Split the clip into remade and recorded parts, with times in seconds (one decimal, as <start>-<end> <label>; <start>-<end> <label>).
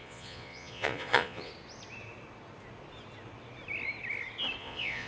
0.0-1.5 remade; 1.5-4.6 recorded; 4.6-5.1 remade